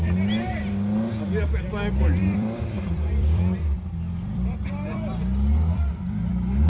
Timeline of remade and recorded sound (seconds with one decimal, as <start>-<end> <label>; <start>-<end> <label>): 0.0-2.2 recorded; 2.2-6.2 remade; 6.2-6.7 recorded